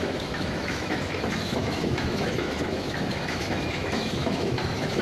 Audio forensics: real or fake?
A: fake